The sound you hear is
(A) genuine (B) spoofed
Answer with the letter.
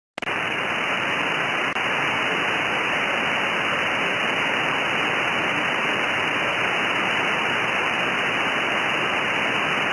A